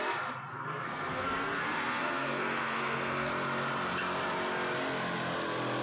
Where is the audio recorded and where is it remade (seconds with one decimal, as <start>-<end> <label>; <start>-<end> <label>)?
0.0-0.5 recorded; 0.5-3.3 remade; 3.3-5.8 recorded